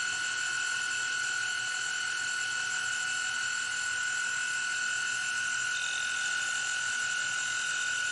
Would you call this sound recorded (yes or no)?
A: yes